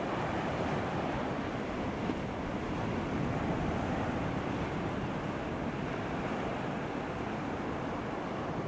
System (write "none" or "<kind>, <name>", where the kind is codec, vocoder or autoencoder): none